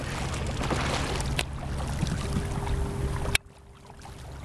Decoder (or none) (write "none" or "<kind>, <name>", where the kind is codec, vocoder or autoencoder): none